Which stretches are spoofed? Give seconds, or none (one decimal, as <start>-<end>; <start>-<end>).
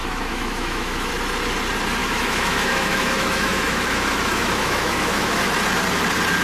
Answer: 0.0-1.1; 2.0-5.5